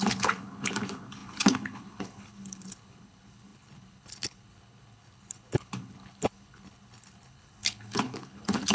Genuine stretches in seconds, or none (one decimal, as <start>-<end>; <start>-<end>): none

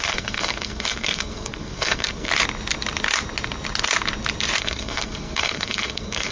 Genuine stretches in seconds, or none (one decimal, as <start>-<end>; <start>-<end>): 2.3-4.6

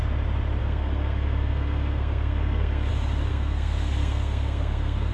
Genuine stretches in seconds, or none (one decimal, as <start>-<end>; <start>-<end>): 0.0-0.6; 2.9-3.3

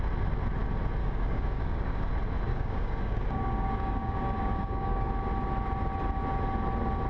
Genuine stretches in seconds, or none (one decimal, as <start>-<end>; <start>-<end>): 0.0-1.0; 2.1-2.5; 5.1-7.1

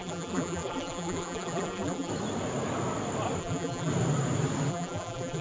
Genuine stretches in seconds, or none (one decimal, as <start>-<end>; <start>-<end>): 2.1-3.4; 3.9-4.7

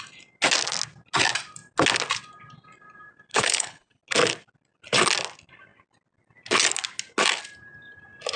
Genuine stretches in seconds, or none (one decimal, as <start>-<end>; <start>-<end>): 0.0-3.3; 4.0-8.4

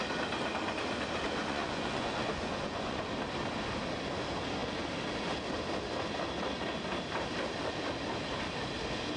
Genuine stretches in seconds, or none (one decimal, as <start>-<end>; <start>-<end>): 0.0-1.4; 3.1-9.2